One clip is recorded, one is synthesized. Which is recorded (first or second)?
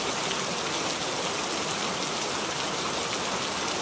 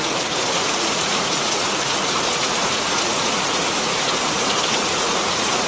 first